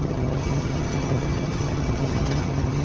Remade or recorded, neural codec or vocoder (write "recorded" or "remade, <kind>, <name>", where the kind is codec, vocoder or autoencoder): remade, vocoder, HiFi-GAN